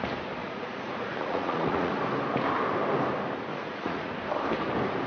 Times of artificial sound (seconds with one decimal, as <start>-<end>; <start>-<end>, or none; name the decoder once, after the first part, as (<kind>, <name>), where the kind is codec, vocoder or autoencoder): 0.4-2.0 (vocoder, Vocos); 3.5-4.1